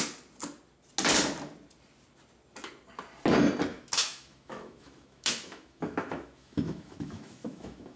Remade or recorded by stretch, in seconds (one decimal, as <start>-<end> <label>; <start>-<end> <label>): 0.0-3.7 recorded; 3.7-8.0 remade